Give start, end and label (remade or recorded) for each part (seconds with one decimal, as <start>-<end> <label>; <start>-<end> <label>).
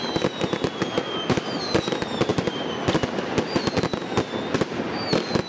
0.0-5.5 recorded